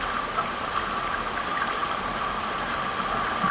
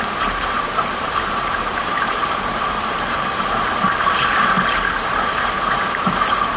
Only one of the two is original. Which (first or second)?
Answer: first